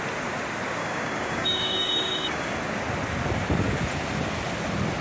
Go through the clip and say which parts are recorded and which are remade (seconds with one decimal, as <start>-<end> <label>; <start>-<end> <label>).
0.0-0.8 recorded; 0.8-2.6 remade; 2.6-5.0 recorded